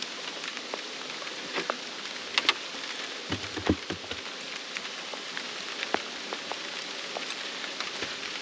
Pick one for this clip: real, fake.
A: real